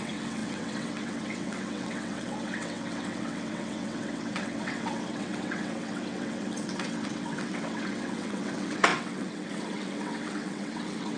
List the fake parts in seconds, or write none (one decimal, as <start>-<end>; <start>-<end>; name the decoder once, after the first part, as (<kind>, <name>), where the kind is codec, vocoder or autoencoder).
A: 0.0-11.2 (vocoder, WaveNeXt)